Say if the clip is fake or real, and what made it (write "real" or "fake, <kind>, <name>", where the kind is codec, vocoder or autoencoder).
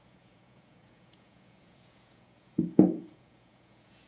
fake, vocoder, Vocos